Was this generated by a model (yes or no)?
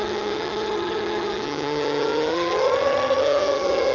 yes